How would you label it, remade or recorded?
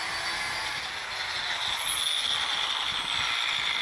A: recorded